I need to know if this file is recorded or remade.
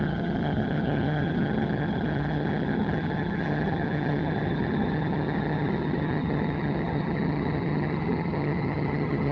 remade